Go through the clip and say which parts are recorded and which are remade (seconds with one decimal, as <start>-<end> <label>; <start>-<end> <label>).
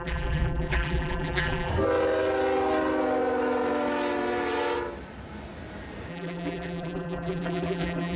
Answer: 0.0-1.7 remade; 1.7-6.1 recorded; 6.1-8.2 remade